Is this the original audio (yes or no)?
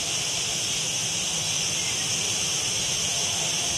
yes